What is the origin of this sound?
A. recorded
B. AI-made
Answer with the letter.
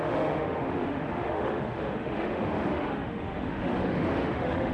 B